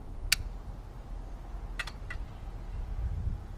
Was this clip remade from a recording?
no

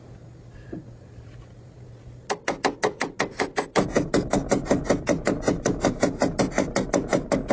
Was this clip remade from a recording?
no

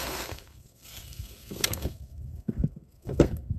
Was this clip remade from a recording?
yes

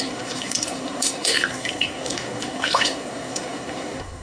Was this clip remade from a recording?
yes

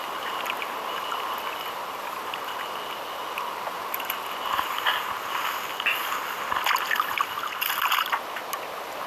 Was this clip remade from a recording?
no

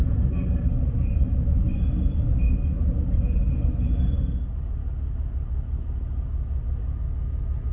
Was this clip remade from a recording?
no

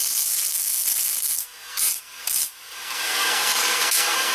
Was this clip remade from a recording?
yes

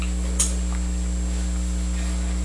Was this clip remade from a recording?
no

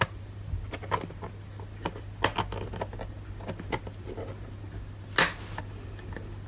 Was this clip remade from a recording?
no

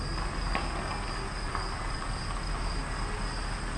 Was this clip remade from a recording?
no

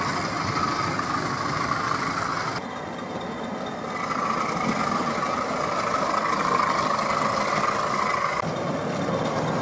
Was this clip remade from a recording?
no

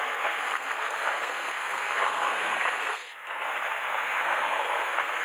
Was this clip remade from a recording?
yes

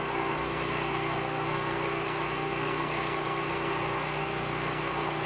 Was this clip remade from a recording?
yes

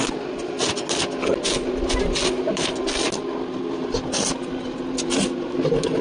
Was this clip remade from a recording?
no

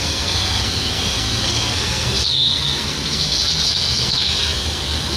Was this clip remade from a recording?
yes